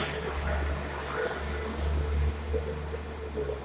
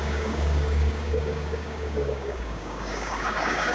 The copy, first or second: second